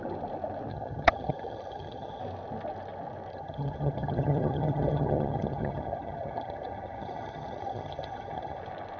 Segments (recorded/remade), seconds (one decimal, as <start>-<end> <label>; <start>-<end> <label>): 0.0-0.7 recorded; 0.7-2.2 remade; 2.2-3.3 recorded; 3.3-8.6 remade; 8.6-9.0 recorded